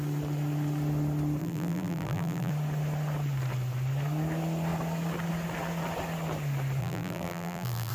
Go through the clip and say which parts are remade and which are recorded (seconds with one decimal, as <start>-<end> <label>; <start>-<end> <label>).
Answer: 0.0-1.4 recorded; 1.4-2.5 remade; 2.5-6.8 recorded; 6.8-7.9 remade